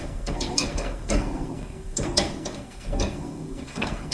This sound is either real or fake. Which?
fake